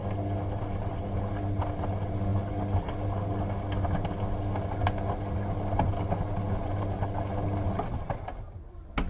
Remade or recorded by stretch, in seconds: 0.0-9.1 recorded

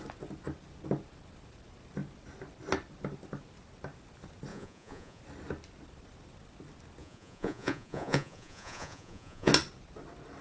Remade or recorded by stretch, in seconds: 0.0-4.5 recorded; 4.5-5.2 remade; 5.2-7.0 recorded; 7.0-9.5 remade; 9.5-10.4 recorded

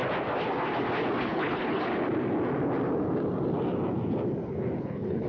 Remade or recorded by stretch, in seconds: 0.0-1.2 recorded; 1.2-1.9 remade; 1.9-4.8 recorded; 4.8-5.3 remade

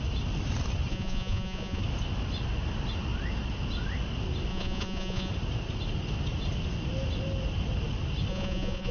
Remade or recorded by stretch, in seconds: 0.0-0.9 recorded; 0.9-1.8 remade; 1.8-4.5 recorded; 4.5-5.3 remade; 5.3-8.3 recorded; 8.3-8.9 remade

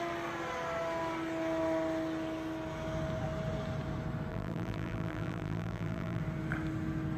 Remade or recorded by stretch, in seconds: 0.0-4.3 recorded; 4.3-6.2 remade; 6.2-7.2 recorded